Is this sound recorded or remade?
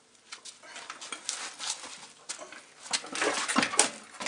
recorded